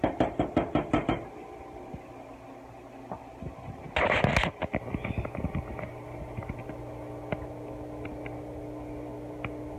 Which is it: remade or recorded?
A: recorded